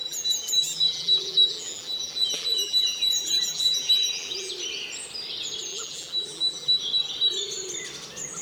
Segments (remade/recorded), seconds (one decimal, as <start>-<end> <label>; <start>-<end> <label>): 0.0-4.5 remade; 4.5-5.7 recorded; 5.7-6.8 remade; 6.8-8.4 recorded